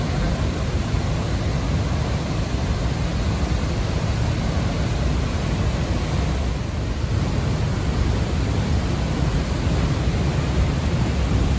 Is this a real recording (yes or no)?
yes